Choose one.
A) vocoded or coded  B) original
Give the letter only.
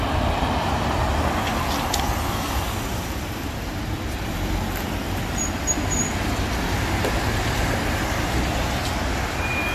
B